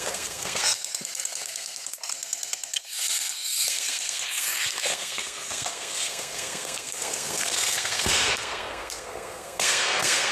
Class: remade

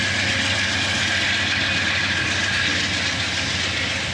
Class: recorded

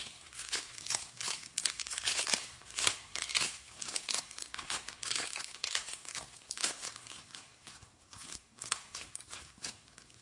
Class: remade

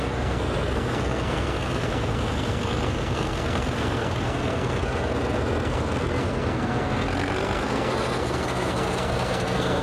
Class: remade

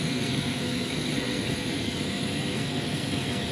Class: remade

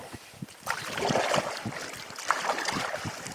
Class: recorded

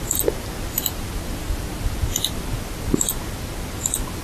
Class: recorded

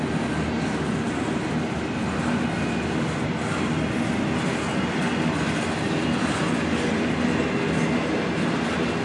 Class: recorded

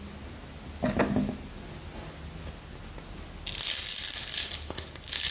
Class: recorded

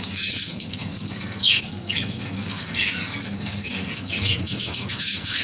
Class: remade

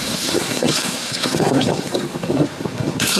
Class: remade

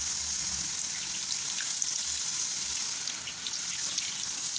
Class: recorded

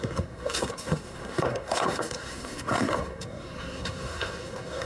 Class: remade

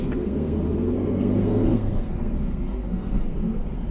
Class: remade